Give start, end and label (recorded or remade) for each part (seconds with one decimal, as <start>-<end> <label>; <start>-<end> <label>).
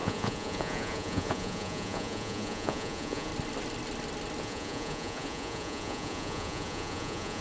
0.0-3.3 remade; 3.3-4.4 recorded; 4.4-7.4 remade